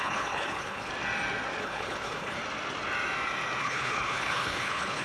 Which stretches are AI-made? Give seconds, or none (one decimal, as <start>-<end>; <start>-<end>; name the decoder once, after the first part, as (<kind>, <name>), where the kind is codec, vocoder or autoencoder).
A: 0.0-0.9 (codec, HILCodec); 1.6-2.4; 3.6-5.0